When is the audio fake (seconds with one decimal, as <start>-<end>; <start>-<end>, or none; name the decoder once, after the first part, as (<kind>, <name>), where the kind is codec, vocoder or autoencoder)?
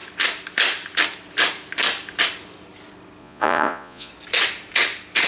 3.2-4.1 (vocoder, Vocos)